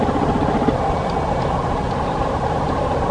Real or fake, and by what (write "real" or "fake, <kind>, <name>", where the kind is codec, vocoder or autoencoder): real